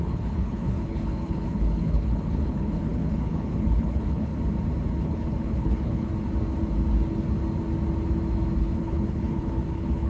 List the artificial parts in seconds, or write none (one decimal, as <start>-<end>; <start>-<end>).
0.0-4.3; 5.0-6.1; 8.6-10.1